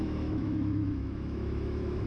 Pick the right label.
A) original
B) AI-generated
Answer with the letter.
B